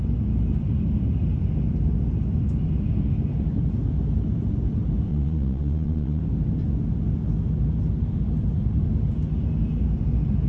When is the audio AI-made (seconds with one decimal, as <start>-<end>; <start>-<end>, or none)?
5.1-6.2